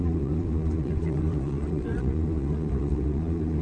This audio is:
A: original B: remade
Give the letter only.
B